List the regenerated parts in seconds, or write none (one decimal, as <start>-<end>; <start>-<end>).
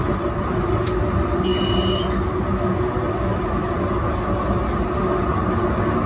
none